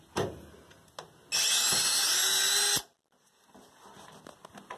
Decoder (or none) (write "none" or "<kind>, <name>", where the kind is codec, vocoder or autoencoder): none